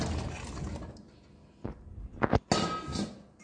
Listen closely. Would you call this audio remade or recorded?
recorded